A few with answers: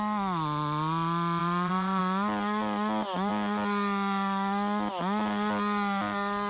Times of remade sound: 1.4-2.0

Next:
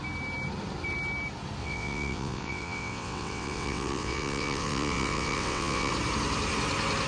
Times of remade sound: 1.6-5.9